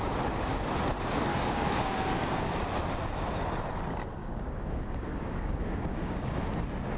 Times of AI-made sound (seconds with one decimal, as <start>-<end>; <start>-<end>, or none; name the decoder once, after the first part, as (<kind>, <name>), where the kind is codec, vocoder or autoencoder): 1.3-2.5 (codec, DAC); 4.2-6.4